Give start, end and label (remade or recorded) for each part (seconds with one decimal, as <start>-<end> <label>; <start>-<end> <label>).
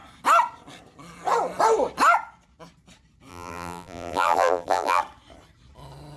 0.0-3.3 recorded; 3.3-5.0 remade; 5.0-6.2 recorded